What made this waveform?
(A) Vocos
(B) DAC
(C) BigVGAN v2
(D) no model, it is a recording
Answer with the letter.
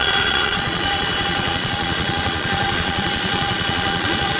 A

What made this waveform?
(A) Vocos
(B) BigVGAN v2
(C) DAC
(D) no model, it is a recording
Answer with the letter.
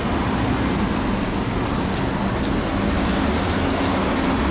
D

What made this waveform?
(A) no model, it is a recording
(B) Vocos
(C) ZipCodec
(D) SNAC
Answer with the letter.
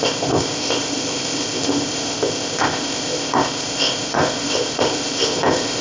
C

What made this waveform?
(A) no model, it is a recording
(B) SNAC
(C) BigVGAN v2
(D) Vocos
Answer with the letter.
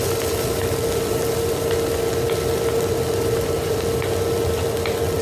A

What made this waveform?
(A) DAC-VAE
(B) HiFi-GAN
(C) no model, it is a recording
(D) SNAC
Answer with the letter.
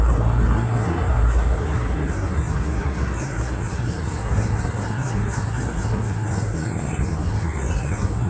D